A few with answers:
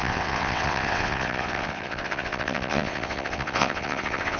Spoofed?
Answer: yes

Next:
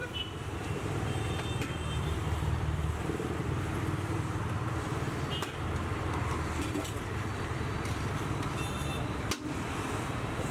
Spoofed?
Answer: yes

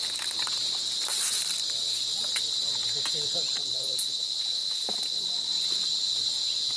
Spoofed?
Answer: no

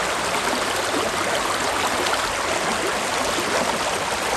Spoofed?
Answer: no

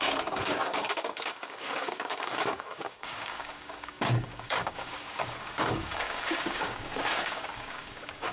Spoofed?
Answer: yes